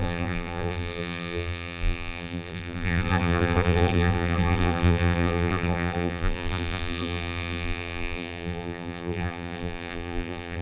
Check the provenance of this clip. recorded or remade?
remade